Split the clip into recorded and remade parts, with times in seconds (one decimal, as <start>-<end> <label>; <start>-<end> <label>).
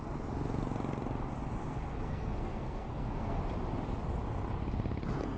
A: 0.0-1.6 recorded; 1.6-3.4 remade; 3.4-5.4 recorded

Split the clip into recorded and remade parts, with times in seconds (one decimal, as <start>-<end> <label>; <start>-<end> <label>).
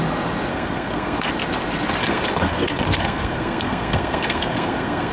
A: 0.0-0.5 recorded; 0.5-1.3 remade; 1.3-2.0 recorded; 2.0-5.1 remade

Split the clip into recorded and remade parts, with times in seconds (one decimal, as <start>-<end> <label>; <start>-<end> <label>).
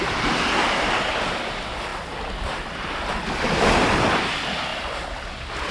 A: 0.0-5.7 recorded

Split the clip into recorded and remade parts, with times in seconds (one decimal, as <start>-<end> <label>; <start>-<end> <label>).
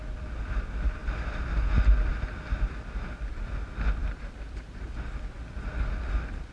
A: 0.0-6.5 recorded